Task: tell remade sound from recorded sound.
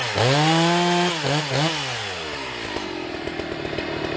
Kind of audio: recorded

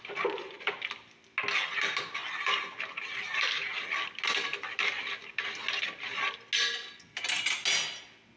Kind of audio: recorded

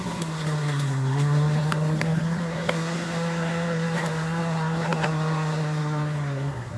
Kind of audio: remade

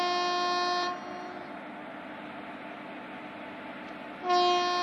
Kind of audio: recorded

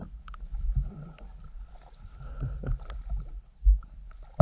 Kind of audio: recorded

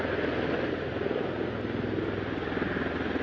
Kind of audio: recorded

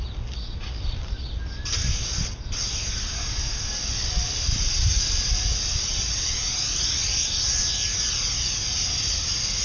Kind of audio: recorded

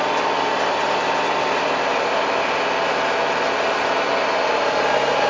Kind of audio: recorded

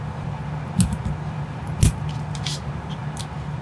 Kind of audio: recorded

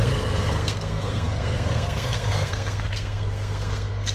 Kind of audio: remade